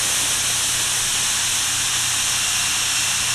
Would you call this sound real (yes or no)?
yes